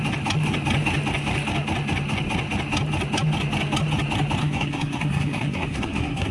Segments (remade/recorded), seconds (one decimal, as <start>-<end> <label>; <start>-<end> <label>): 0.0-4.4 recorded; 4.4-6.3 remade